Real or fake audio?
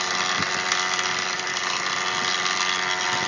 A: real